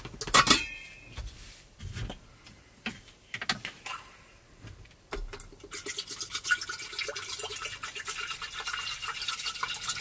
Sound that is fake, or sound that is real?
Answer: real